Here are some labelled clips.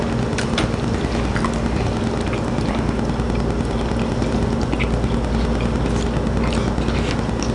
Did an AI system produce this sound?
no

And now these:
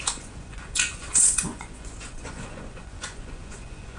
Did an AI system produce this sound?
yes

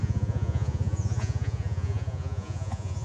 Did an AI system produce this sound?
yes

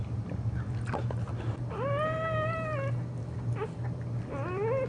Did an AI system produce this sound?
no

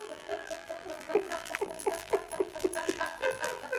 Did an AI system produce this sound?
yes